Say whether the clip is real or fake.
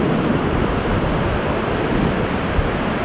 real